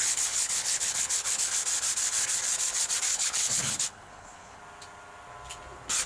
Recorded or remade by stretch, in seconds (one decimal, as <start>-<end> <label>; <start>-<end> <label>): 0.0-1.5 remade; 1.5-3.1 recorded; 3.1-4.6 remade; 4.6-6.1 recorded